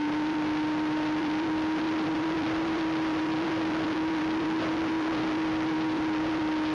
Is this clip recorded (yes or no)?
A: no